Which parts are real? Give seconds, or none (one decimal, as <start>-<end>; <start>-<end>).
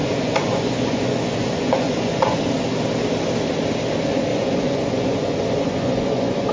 2.4-4.3